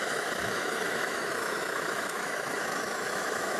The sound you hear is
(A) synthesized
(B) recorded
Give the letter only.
A